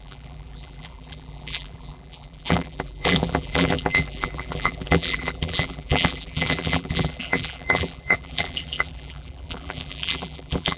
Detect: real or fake fake